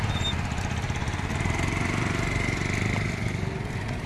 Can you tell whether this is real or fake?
real